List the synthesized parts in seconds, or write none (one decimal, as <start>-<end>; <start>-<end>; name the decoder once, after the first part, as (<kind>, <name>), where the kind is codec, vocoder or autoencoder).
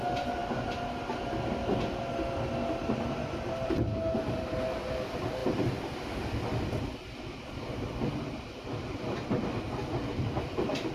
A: none